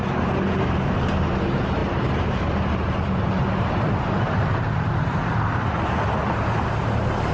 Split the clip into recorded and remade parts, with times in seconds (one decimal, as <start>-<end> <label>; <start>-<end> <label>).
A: 0.0-6.2 remade; 6.2-6.7 recorded; 6.7-7.3 remade